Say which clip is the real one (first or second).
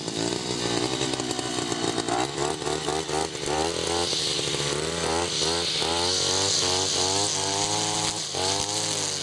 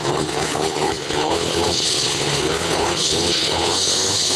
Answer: first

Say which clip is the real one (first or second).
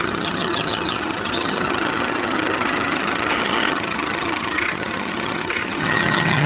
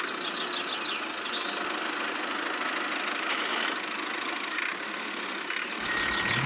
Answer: second